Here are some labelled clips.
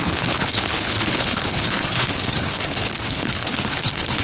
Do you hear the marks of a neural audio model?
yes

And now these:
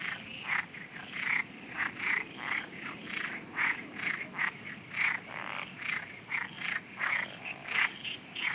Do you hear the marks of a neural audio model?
no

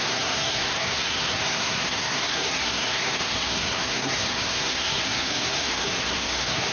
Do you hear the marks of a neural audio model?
yes